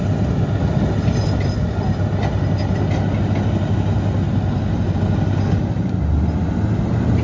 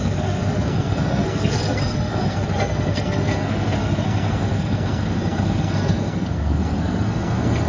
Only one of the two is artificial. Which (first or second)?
second